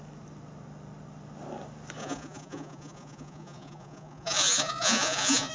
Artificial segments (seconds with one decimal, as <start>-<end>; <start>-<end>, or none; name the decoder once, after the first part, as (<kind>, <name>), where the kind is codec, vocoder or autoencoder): 2.0-5.5 (vocoder, Vocos)